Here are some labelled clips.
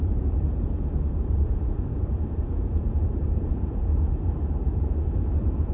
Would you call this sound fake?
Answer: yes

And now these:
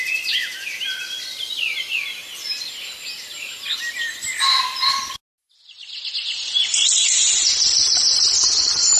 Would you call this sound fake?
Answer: no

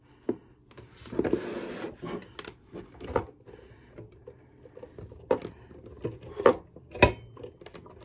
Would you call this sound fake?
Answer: no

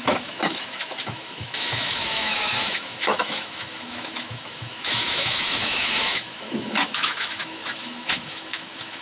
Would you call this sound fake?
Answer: yes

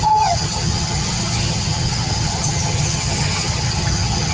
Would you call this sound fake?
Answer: yes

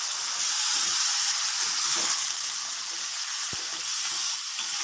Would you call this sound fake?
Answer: no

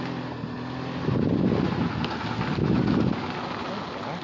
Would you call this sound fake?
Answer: no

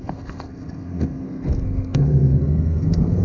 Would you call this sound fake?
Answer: yes